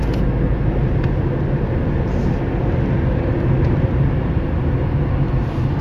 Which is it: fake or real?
real